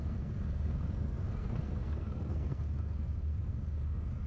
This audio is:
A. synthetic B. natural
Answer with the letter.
A